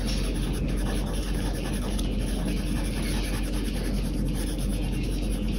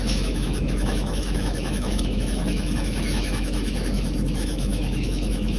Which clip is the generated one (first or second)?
second